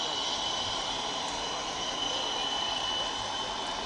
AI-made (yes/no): no